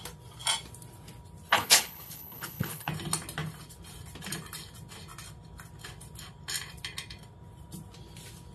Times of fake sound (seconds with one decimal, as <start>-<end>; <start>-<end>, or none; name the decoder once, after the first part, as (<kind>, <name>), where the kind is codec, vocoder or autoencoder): 1.5-2.9 (codec, HILCodec)